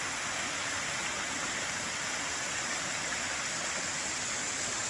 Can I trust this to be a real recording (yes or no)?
yes